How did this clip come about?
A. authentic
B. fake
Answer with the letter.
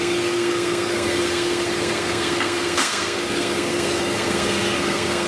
B